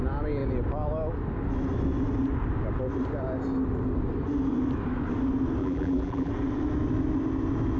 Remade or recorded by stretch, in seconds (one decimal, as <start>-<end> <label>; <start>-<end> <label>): 0.0-5.6 recorded; 5.6-6.3 remade; 6.3-7.8 recorded